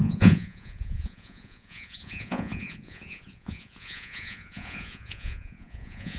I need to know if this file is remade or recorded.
remade